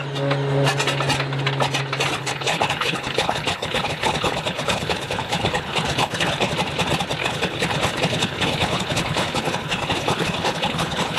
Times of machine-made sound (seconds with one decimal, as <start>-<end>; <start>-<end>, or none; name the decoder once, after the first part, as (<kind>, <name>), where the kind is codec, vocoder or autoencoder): 2.2-6.5 (codec, HILCodec); 7.2-11.2